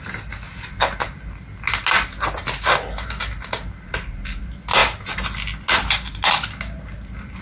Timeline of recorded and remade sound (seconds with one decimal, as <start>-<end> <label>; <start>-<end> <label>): 0.0-7.4 recorded